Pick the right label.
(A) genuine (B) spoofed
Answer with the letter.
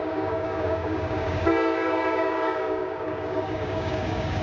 B